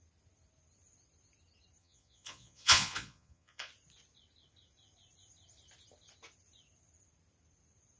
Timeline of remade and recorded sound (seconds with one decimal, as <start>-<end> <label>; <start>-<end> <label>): 0.0-1.8 recorded; 1.8-3.7 remade; 3.7-8.0 recorded

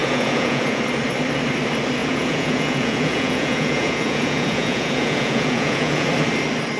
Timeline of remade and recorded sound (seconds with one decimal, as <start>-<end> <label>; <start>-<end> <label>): 0.0-0.8 remade; 0.8-2.0 recorded; 2.0-6.1 remade; 6.1-6.8 recorded

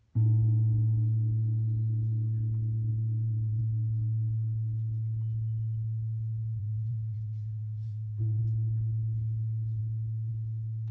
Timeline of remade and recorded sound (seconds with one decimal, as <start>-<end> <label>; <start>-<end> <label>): 0.0-2.9 recorded; 2.9-3.6 remade; 3.6-6.6 recorded; 6.6-8.4 remade; 8.4-10.9 recorded

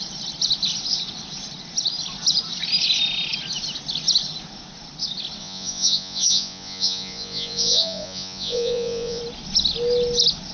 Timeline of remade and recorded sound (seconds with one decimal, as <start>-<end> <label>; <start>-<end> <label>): 0.0-5.4 recorded; 5.4-9.2 remade; 9.2-10.5 recorded